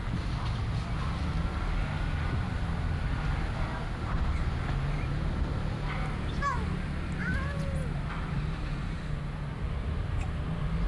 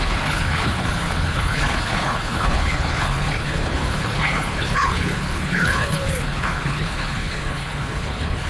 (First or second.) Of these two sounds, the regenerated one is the second